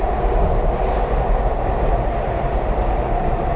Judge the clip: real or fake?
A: fake